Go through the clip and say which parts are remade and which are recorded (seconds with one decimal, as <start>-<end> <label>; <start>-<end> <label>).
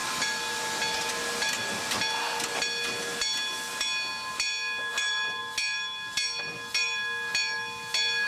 0.0-8.3 recorded